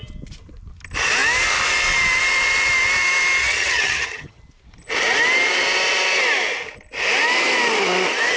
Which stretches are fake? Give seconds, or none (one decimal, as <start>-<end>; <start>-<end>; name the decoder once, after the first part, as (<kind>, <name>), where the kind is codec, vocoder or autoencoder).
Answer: 3.4-4.4 (vocoder, HiFi-GAN)